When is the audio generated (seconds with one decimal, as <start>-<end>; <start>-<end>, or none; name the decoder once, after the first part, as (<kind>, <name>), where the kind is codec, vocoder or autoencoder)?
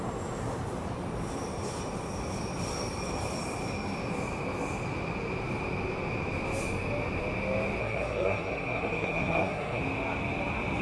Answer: 7.8-9.8 (codec, SNAC)